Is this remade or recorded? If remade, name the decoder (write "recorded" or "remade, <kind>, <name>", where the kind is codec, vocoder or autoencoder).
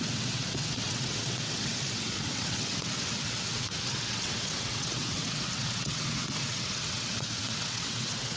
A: remade, vocoder, WaveNeXt